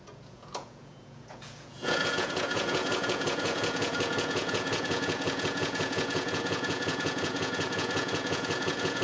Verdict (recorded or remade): remade